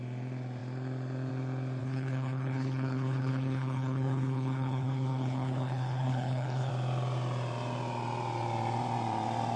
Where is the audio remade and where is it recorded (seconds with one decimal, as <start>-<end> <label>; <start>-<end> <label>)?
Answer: 0.0-1.8 recorded; 1.8-6.7 remade; 6.7-9.6 recorded